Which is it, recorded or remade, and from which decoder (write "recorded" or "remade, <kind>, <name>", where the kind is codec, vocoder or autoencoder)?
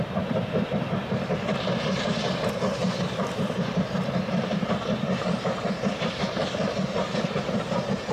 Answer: remade, vocoder, BigVGAN v2